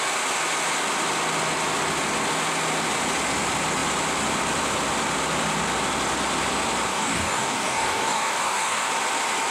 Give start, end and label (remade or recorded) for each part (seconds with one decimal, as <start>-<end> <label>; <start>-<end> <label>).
0.0-6.9 recorded; 6.9-8.9 remade; 8.9-9.5 recorded